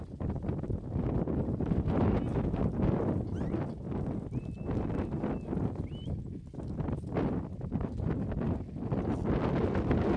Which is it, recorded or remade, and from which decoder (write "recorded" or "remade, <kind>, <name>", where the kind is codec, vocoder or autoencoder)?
recorded